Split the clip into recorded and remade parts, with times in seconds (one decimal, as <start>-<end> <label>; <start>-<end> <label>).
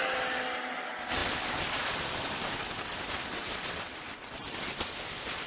0.0-5.5 recorded